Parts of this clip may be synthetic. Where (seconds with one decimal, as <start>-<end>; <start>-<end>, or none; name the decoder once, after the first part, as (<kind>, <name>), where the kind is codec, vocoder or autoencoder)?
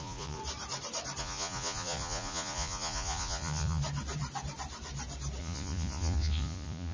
0.0-0.4 (vocoder, Vocos); 1.2-3.8; 5.4-6.9